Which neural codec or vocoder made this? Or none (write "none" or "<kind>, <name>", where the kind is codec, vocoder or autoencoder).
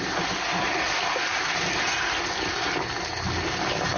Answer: none